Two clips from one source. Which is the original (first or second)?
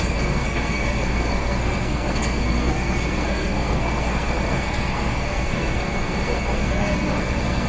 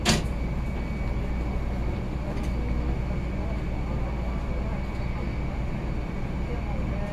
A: second